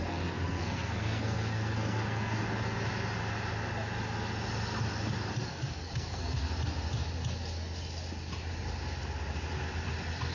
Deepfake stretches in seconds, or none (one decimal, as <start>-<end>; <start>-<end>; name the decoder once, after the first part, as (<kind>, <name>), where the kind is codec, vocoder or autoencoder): 0.0-2.4 (codec, SNAC); 5.5-6.5